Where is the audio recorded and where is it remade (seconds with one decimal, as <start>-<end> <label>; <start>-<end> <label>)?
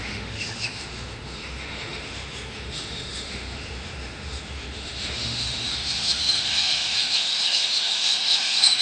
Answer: 0.0-8.8 remade